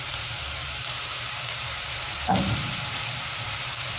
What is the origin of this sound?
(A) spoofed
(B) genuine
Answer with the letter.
A